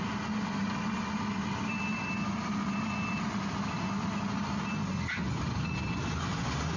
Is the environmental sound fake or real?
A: real